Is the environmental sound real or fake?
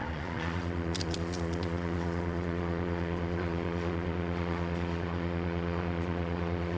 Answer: fake